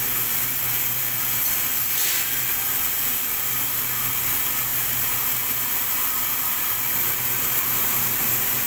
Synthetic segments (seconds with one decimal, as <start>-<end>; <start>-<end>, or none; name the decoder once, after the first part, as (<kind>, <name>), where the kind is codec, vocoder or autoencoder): none